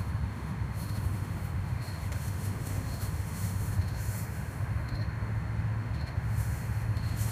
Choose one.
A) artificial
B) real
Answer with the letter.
A